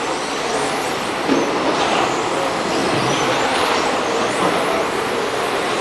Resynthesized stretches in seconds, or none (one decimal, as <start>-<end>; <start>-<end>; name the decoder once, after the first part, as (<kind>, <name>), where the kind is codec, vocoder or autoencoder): 0.0-2.8 (vocoder, BigVGAN v2); 3.3-4.4